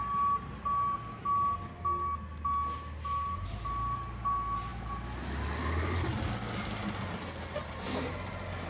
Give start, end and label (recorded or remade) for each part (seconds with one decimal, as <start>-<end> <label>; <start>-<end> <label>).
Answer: 0.0-8.7 recorded